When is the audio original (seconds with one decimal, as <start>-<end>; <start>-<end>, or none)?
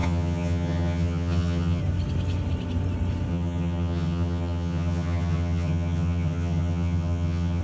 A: 1.8-3.3